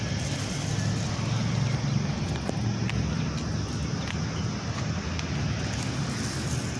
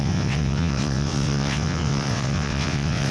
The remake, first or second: second